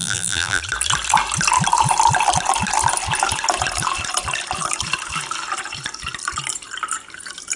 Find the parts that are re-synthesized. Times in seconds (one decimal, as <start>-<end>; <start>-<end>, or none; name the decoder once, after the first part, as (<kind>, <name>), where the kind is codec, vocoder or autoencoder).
0.0-0.6 (vocoder, BigVGAN v2)